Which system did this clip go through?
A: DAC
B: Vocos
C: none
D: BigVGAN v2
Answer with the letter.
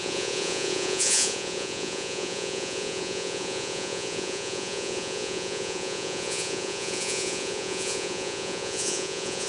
B